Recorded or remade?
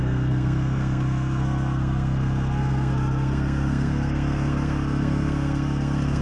remade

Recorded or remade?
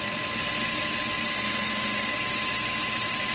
recorded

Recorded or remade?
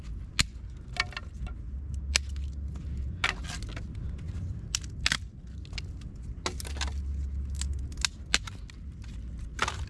recorded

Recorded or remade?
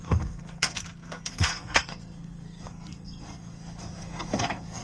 remade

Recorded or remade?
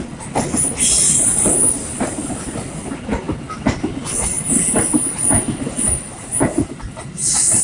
recorded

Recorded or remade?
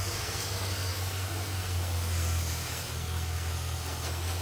remade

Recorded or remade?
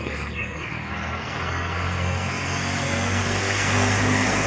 remade